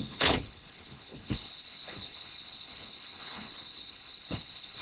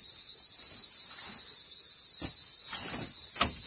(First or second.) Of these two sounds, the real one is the second